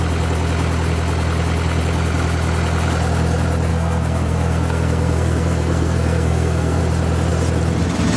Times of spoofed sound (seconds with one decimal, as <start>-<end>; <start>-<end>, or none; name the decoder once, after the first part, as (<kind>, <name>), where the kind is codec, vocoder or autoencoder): 3.7-6.8 (codec, SNAC)

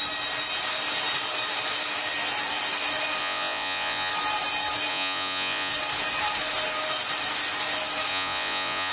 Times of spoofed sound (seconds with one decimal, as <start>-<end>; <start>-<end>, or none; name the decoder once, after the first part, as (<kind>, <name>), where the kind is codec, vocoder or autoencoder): 3.2-4.1 (vocoder, Vocos); 4.9-5.7; 8.1-8.9